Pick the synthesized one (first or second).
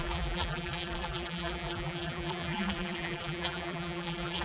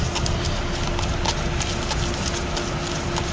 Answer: first